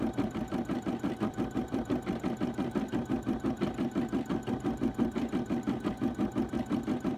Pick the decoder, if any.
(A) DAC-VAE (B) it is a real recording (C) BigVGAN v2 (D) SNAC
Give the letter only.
C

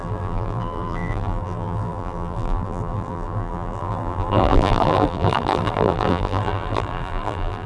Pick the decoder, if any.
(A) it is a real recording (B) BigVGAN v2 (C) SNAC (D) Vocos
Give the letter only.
B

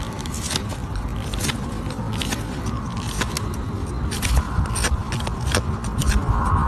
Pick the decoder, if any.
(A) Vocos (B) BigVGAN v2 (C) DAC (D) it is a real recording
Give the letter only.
D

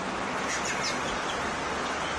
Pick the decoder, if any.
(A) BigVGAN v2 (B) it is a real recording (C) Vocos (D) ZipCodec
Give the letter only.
B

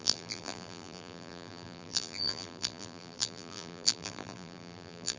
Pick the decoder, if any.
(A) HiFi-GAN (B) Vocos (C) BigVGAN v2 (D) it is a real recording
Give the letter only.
C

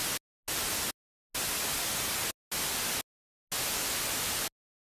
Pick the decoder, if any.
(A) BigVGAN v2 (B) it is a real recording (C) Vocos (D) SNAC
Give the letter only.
B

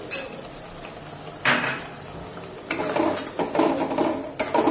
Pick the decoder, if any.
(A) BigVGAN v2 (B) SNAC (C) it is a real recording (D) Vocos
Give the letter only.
C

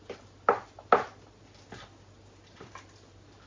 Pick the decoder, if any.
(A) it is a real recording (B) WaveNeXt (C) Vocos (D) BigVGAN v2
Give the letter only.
A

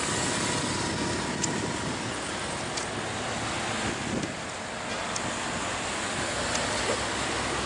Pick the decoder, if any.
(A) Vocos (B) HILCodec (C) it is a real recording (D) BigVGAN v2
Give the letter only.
C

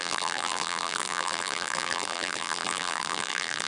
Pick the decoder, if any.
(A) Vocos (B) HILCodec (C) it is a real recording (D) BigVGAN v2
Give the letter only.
D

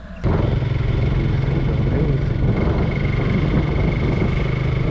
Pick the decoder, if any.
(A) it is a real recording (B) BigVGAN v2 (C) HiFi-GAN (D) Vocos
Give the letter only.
A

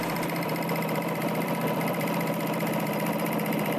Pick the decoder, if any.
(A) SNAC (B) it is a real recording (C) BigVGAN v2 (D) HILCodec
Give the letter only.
C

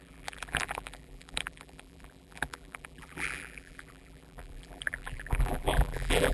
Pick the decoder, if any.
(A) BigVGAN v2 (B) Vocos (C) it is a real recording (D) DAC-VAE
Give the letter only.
A